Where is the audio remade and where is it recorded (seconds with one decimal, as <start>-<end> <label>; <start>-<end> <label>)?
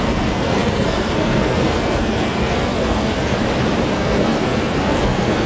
0.0-3.4 remade; 3.4-3.9 recorded; 3.9-5.5 remade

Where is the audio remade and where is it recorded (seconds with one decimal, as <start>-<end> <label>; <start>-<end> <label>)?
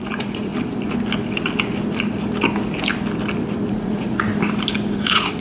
0.0-0.5 remade; 0.5-3.7 recorded; 3.7-4.3 remade; 4.3-5.0 recorded; 5.0-5.4 remade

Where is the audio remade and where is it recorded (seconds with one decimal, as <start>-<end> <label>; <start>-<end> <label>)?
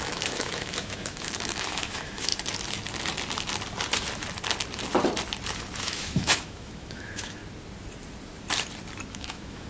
0.0-2.3 remade; 2.3-5.8 recorded; 5.8-7.4 remade; 7.4-9.1 recorded; 9.1-9.7 remade